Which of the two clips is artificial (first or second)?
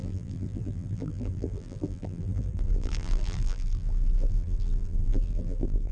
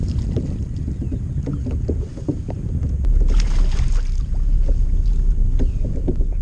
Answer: first